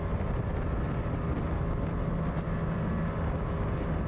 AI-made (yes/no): no